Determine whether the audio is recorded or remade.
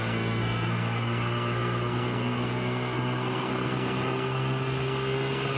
remade